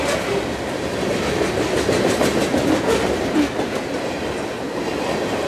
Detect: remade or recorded recorded